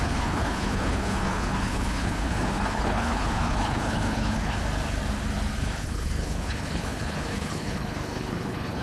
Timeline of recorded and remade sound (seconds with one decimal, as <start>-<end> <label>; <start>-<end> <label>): 0.0-4.6 remade; 4.6-5.6 recorded; 5.6-8.8 remade